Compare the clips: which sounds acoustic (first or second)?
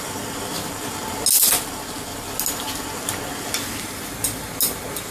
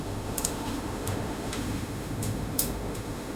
first